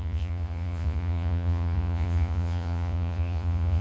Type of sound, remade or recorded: remade